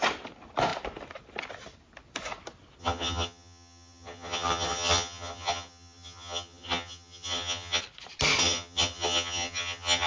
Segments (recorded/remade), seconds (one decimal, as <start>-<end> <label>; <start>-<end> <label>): 0.0-2.8 recorded; 2.8-7.8 remade; 7.8-8.4 recorded; 8.4-10.1 remade